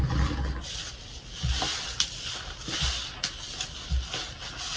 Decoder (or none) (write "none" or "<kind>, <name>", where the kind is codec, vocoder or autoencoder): none